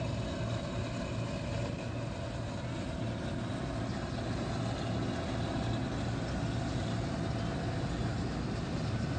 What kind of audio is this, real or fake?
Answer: real